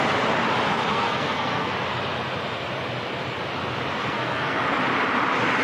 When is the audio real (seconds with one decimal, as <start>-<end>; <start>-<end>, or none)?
0.0-0.9; 1.7-4.0; 4.6-5.6